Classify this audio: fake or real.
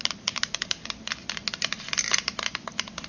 real